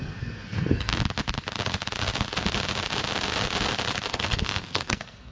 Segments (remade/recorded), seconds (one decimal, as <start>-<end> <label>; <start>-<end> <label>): 0.0-0.9 remade; 0.9-4.1 recorded; 4.1-5.3 remade

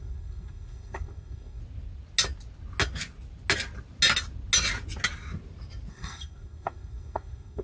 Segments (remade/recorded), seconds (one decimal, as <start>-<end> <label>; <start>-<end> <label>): 0.0-1.6 remade; 1.6-5.9 recorded; 5.9-7.6 remade